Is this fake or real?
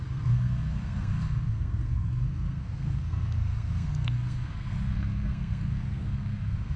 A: fake